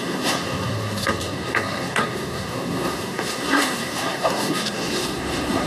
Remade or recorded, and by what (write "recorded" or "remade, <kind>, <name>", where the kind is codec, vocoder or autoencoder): remade, codec, SNAC